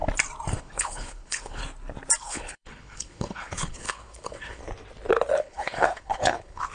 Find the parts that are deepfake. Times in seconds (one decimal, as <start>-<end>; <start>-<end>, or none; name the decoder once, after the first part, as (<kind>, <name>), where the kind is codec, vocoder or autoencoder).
0.6-1.6 (codec, HILCodec); 2.2-4.6; 5.4-6.7